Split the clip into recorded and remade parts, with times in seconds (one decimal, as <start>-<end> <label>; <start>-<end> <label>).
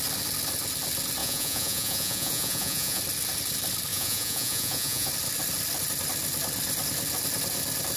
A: 0.0-1.2 recorded; 1.2-3.0 remade; 3.0-3.9 recorded; 3.9-5.1 remade; 5.1-8.0 recorded